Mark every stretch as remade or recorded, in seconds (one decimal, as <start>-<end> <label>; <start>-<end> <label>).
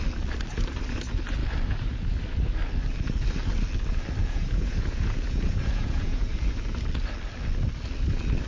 0.0-4.2 recorded; 4.2-6.3 remade; 6.3-8.5 recorded